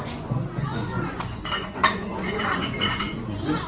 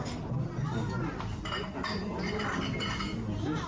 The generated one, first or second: first